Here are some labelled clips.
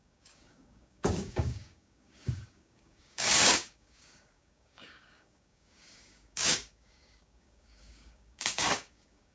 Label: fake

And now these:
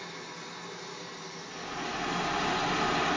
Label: real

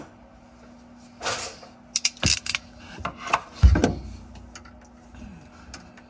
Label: real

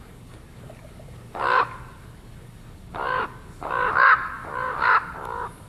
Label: fake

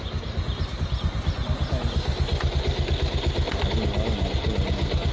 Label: real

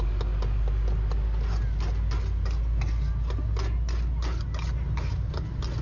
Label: real